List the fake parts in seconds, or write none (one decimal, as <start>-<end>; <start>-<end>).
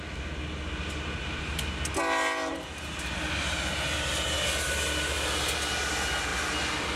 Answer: 2.5-3.1